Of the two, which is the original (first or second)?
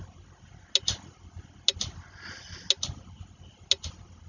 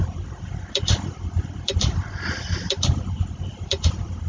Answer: first